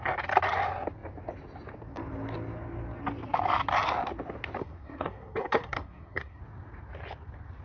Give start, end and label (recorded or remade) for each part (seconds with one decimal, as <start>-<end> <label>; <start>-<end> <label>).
0.0-4.6 recorded; 4.6-6.4 remade; 6.4-7.6 recorded